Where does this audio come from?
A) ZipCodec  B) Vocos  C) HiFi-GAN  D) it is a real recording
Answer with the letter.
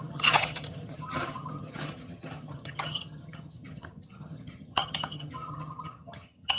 C